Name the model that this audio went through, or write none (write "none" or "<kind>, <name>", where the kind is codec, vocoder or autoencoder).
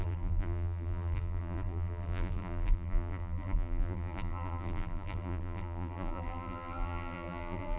vocoder, BigVGAN v2